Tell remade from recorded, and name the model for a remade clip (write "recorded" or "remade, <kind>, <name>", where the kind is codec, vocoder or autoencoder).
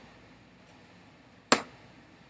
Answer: recorded